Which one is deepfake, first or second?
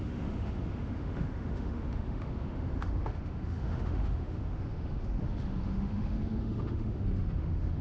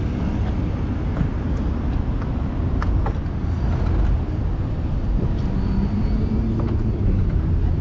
first